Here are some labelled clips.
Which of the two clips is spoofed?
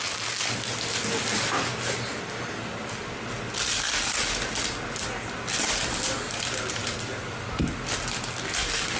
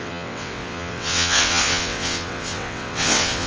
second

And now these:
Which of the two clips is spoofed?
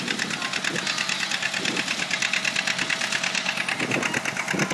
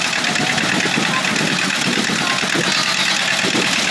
first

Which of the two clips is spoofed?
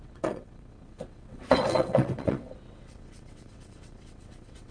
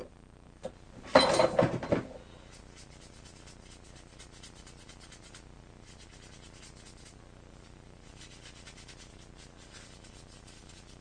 first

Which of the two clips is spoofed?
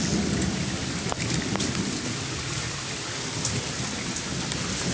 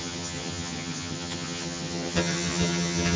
second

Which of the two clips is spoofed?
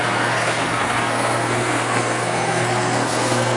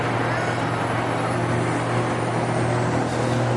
first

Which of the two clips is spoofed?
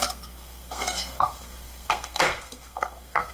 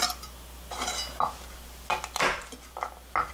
first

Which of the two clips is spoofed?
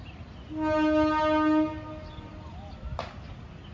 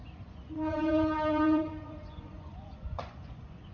second